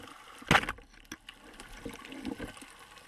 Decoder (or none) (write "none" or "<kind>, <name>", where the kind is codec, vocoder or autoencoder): none